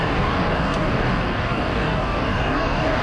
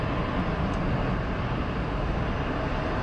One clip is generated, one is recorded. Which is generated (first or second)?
first